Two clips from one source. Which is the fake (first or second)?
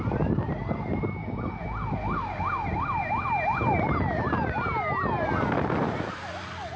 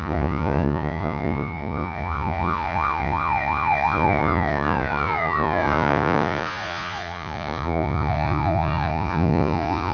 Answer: second